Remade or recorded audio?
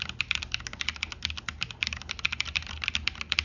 recorded